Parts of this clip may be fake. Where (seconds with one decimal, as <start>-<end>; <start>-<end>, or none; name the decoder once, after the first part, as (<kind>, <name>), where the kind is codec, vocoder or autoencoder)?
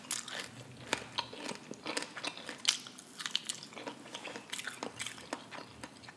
none